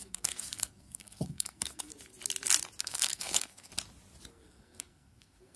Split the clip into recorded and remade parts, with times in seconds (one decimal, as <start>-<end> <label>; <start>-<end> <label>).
0.0-1.9 remade; 1.9-2.8 recorded; 2.8-3.7 remade; 3.7-4.3 recorded; 4.3-5.6 remade